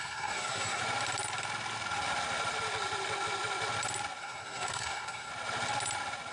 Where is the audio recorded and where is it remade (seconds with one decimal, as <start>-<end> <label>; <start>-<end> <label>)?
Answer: 0.0-0.8 remade; 0.8-4.2 recorded; 4.2-5.3 remade; 5.3-6.3 recorded